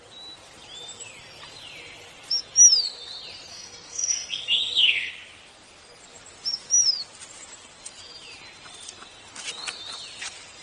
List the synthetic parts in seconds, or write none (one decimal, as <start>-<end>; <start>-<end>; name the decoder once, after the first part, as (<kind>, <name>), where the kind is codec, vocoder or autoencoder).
3.5-5.1 (codec, SNAC)